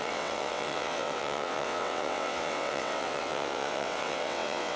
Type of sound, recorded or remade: remade